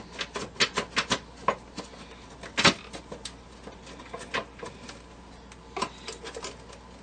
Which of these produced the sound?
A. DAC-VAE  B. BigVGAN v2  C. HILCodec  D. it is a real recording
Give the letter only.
D